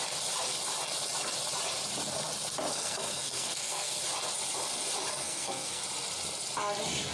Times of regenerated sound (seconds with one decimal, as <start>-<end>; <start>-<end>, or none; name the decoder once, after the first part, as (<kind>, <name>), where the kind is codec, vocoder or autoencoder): 2.7-4.0 (codec, SNAC); 5.1-5.8